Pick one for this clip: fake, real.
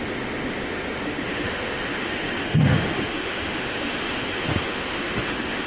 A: fake